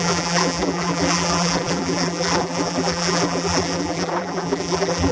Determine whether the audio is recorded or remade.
remade